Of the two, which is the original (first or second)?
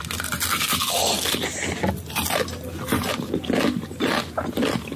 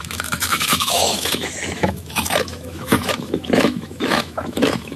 first